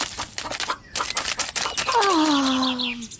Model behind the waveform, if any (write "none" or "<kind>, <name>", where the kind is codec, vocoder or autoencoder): none